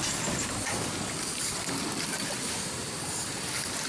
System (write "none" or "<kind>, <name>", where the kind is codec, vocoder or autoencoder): vocoder, BigVGAN v2